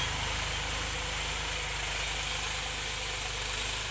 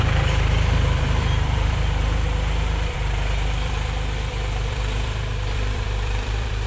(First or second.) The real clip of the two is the first